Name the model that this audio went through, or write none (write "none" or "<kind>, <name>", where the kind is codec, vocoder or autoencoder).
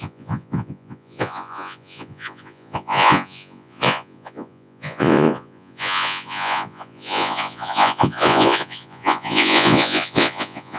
vocoder, Vocos